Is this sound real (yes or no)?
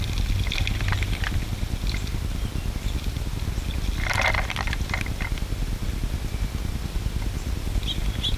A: yes